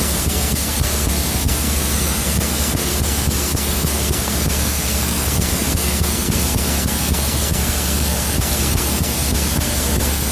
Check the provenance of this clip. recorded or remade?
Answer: remade